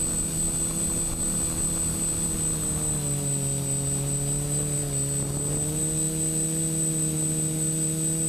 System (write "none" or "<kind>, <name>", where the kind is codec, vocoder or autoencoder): none